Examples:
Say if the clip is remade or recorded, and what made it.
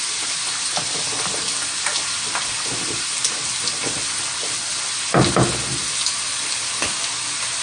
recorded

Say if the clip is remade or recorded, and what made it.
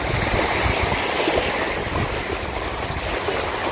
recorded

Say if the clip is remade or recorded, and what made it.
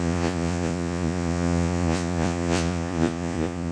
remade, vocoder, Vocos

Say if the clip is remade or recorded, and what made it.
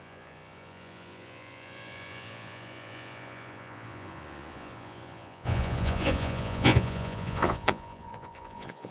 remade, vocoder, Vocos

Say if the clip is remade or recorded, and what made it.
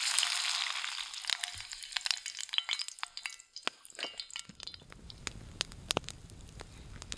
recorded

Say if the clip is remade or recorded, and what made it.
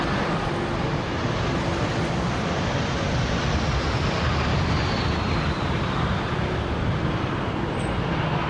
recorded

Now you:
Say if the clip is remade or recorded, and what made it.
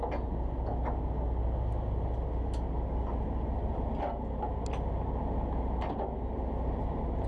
recorded